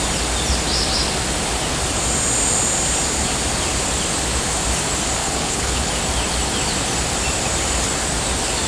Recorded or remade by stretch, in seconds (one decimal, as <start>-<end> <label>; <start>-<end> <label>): 0.0-5.2 recorded; 5.2-5.9 remade; 5.9-8.7 recorded